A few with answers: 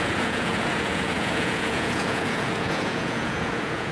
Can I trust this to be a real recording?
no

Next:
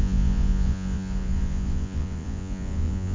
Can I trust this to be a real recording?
no